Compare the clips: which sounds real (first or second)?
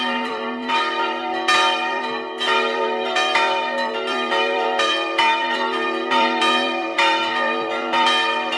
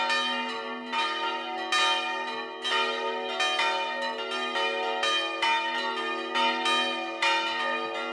second